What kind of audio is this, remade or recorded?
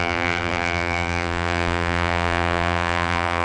remade